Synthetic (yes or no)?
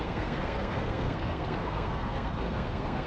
yes